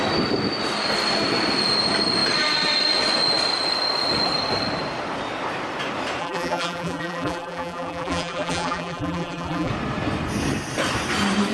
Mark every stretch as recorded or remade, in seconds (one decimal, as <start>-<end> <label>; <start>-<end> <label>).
0.0-6.2 recorded; 6.2-9.7 remade; 9.7-11.5 recorded